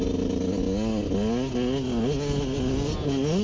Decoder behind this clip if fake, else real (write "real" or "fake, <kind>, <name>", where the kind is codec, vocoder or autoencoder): real